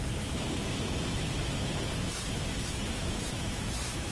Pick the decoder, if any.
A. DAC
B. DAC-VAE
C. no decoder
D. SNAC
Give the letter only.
B